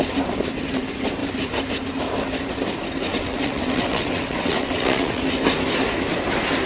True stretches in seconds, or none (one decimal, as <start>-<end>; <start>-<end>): 0.0-3.1; 5.2-6.7